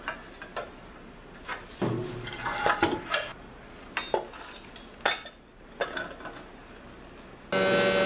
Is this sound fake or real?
real